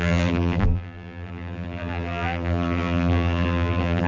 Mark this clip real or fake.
fake